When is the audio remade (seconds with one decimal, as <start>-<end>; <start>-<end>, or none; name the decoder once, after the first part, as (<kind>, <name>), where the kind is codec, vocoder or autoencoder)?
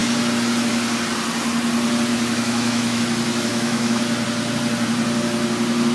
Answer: 2.1-3.0 (autoencoder, DAC-VAE); 3.5-4.0